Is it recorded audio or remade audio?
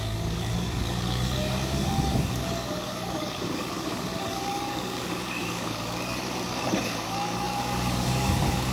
remade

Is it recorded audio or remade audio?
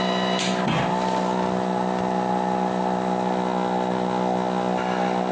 recorded